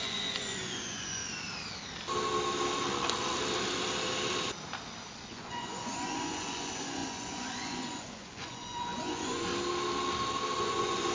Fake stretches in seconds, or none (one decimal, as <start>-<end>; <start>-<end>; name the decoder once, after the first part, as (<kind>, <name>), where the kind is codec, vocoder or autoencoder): 0.0-1.2 (vocoder, Vocos); 5.2-9.5; 10.6-11.1